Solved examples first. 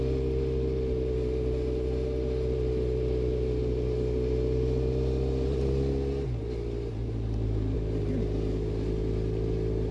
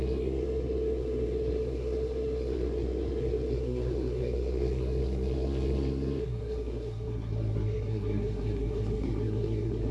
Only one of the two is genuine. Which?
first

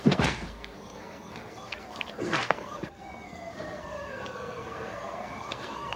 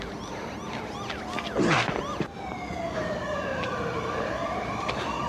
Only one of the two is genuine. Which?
second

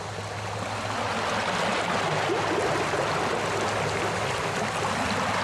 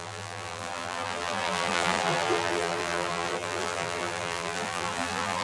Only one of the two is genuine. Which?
first